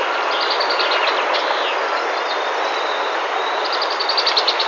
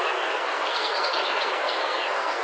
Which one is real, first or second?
first